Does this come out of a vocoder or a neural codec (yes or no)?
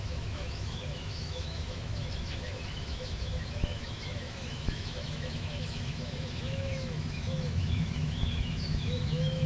yes